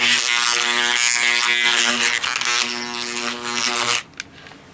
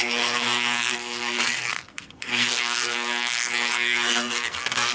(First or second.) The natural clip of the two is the first